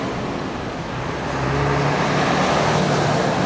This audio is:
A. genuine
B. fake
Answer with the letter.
A